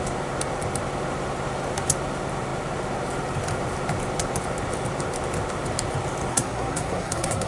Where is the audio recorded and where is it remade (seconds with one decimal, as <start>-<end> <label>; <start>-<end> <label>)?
0.0-6.3 recorded; 6.3-7.5 remade